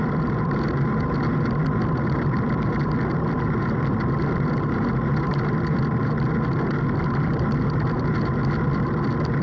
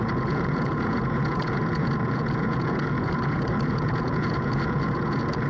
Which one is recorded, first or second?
first